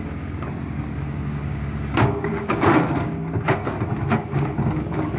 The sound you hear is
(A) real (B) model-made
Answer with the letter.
B